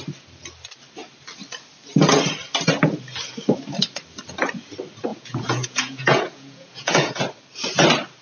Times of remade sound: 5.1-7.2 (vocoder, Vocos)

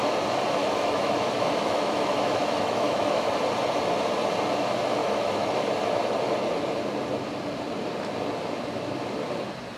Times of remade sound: 0.6-3.3 (autoencoder, DAC-VAE); 5.0-5.5